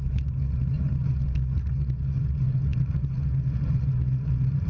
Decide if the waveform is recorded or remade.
recorded